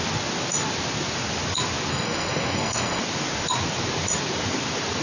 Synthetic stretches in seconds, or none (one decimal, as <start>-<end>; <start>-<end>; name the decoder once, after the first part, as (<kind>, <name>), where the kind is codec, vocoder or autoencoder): 1.9-3.0 (codec, SNAC)